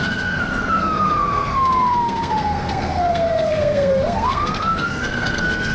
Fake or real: fake